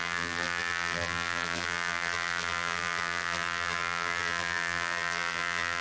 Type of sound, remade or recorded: remade